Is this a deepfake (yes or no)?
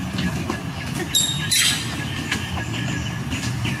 no